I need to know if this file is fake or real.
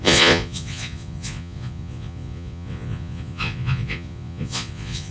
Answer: fake